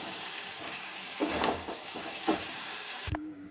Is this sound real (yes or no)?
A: no